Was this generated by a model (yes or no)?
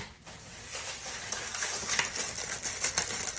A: no